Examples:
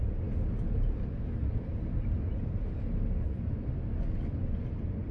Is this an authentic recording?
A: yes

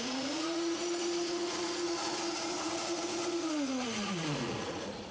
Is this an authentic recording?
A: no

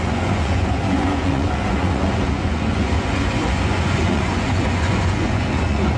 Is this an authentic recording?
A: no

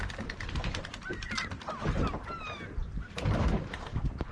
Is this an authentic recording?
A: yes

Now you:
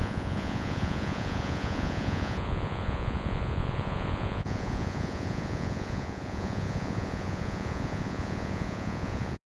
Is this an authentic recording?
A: no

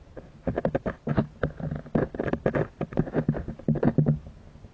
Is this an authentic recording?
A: yes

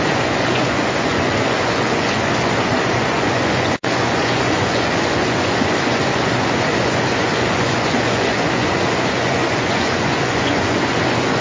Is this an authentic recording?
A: no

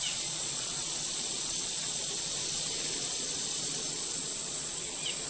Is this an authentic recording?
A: no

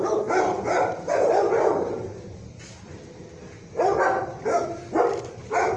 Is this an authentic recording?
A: yes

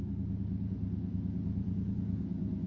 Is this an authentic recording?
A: no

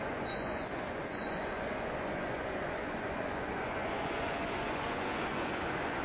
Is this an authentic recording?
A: no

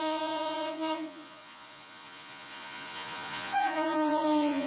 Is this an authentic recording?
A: no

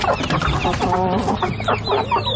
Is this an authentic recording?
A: yes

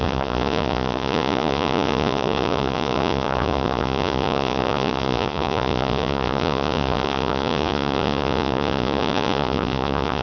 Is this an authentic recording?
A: no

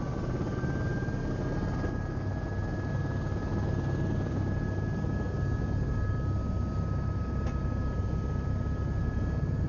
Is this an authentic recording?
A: yes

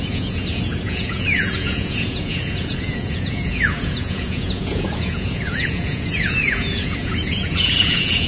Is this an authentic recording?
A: no